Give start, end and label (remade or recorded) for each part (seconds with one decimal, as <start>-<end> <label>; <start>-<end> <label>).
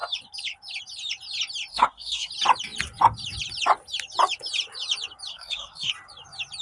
0.0-1.7 recorded; 1.7-2.3 remade; 2.3-5.3 recorded; 5.3-5.9 remade; 5.9-6.6 recorded